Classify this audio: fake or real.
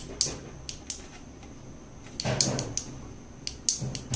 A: real